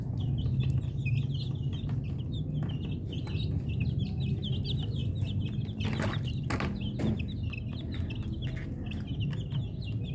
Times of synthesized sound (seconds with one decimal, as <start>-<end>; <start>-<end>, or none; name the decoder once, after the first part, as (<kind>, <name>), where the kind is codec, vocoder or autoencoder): none